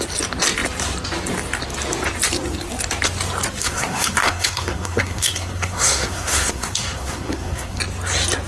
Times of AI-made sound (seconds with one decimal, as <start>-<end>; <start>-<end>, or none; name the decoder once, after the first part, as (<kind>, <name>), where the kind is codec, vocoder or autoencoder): 3.6-7.8 (codec, SNAC)